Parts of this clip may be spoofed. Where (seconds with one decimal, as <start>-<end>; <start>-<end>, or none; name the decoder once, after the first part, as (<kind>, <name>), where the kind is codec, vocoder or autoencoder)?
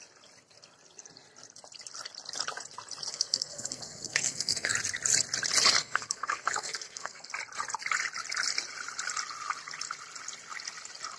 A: 3.1-4.7 (codec, SNAC); 5.8-7.3